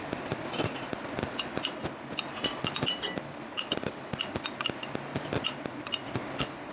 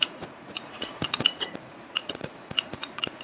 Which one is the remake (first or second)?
second